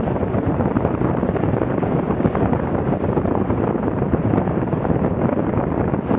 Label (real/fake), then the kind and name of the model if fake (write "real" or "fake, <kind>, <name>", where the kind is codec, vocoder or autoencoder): fake, vocoder, BigVGAN v2